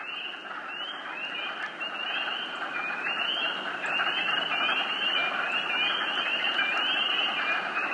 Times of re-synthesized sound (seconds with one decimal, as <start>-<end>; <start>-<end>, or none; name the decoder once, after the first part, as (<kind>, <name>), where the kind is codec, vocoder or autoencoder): none

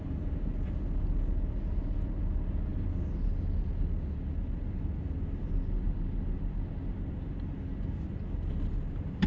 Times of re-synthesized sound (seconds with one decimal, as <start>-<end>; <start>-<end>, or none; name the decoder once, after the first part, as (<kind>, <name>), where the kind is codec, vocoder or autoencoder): none

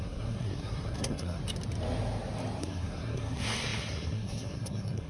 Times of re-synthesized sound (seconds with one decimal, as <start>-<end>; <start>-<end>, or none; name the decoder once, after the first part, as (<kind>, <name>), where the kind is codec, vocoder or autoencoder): 0.0-1.4 (codec, SNAC); 2.6-5.1

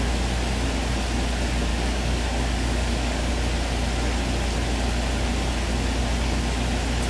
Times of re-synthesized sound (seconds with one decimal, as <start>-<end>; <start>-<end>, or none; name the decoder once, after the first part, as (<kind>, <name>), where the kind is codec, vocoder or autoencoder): 1.7-3.3 (codec, DAC)

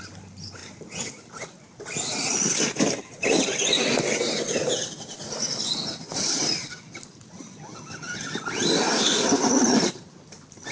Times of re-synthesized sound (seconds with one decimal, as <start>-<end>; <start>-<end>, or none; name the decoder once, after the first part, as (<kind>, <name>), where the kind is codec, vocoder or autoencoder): none

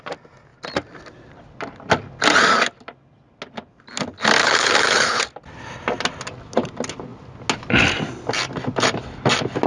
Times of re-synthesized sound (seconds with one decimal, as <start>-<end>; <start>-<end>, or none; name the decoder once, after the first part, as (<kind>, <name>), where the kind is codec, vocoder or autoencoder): 4.4-5.2 (codec, HILCodec)

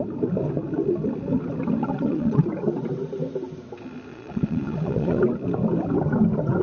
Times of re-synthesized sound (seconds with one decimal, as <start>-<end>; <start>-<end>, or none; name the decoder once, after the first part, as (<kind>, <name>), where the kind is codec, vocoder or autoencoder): 1.8-2.4 (vocoder, Vocos); 4.1-5.2

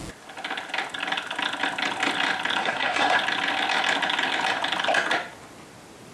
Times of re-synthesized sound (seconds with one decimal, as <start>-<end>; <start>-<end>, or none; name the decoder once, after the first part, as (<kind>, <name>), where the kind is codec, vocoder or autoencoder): 2.6-3.2 (codec, SNAC)